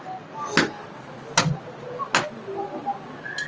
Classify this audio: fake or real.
real